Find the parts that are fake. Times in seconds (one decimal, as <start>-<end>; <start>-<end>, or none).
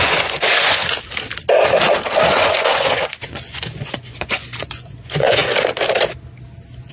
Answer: 0.0-0.8; 2.3-5.4